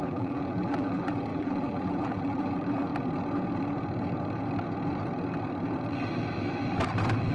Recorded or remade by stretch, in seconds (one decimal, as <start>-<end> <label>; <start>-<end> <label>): 0.0-2.9 remade; 2.9-7.3 recorded